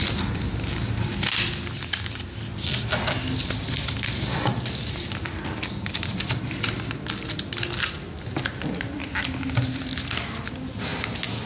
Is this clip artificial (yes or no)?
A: no